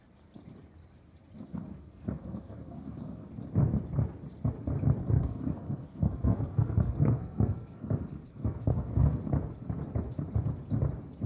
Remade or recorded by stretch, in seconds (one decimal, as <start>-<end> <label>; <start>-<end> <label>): 0.0-1.5 recorded; 1.5-3.3 remade; 3.3-5.0 recorded; 5.0-9.2 remade; 9.2-11.3 recorded